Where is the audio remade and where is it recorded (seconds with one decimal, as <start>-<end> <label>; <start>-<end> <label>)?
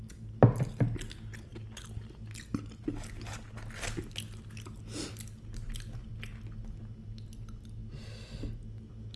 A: 0.0-9.2 recorded